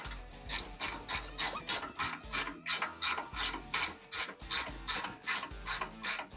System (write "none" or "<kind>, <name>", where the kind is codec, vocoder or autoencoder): none